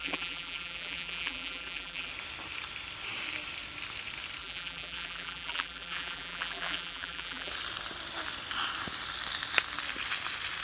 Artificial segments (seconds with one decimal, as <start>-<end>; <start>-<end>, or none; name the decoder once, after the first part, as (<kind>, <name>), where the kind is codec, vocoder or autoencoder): 0.0-2.1 (vocoder, BigVGAN v2); 4.4-7.5